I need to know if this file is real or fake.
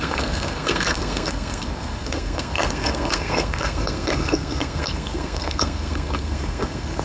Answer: fake